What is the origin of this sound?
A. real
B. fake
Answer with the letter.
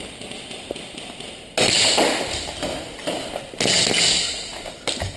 A